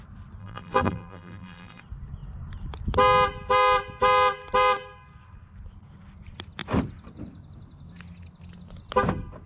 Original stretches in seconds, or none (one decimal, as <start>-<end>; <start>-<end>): 0.0-0.4; 1.8-9.5